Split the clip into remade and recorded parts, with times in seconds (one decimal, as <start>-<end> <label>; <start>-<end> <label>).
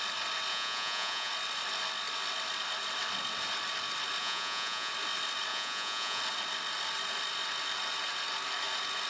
0.0-0.5 recorded; 0.5-1.3 remade; 1.3-4.2 recorded; 4.2-4.9 remade; 4.9-5.5 recorded; 5.5-6.2 remade; 6.2-9.1 recorded